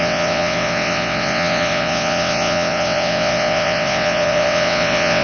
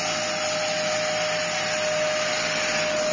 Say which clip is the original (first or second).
second